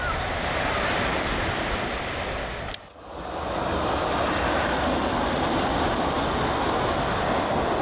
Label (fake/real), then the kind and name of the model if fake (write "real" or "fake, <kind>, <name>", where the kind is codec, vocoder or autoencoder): real